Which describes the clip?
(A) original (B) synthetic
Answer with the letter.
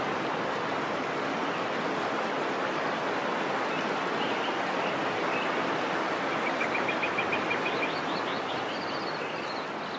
A